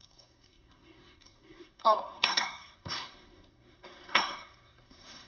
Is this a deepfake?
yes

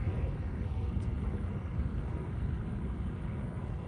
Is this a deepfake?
yes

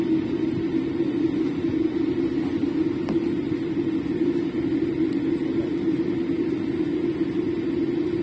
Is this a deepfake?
no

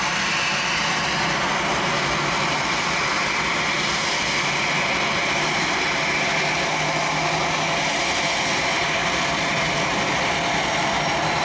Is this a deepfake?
no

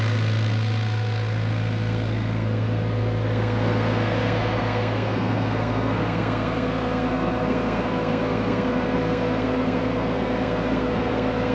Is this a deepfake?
yes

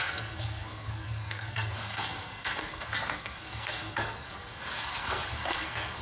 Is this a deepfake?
yes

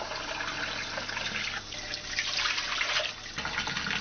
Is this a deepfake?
no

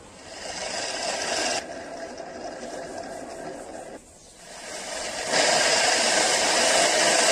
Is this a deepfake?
no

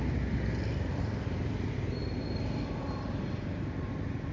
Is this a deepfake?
no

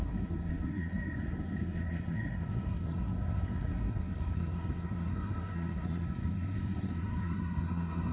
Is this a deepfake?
yes